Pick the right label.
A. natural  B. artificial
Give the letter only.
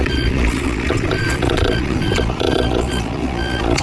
B